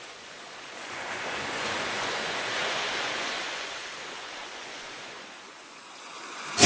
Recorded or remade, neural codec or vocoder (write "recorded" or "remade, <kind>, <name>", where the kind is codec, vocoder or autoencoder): remade, vocoder, Vocos